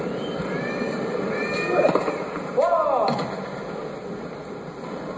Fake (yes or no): yes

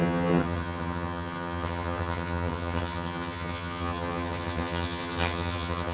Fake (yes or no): yes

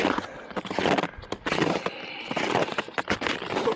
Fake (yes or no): no